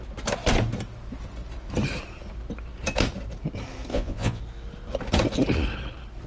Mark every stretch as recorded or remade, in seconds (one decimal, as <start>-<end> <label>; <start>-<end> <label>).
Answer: 0.0-3.9 recorded; 3.9-4.4 remade; 4.4-6.3 recorded